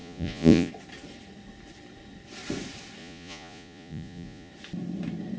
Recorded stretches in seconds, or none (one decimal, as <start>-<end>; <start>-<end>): 0.7-3.0; 4.5-5.4